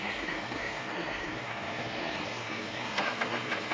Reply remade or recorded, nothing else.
remade